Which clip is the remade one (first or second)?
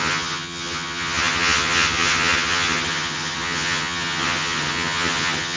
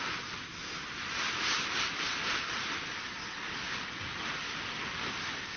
first